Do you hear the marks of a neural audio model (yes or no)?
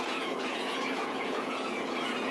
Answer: yes